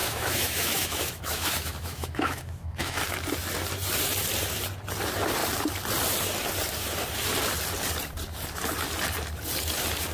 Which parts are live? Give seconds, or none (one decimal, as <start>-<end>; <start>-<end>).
3.0-10.1